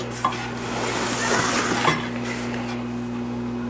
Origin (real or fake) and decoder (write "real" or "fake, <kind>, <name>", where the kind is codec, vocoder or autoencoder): real